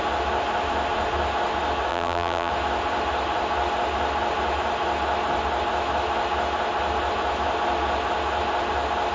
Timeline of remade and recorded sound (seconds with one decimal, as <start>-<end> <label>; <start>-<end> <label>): 0.0-1.9 recorded; 1.9-2.5 remade; 2.5-9.1 recorded